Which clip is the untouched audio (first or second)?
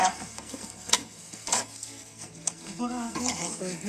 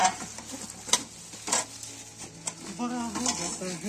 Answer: second